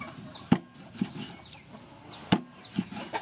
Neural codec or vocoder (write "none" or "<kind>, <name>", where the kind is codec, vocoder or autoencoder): none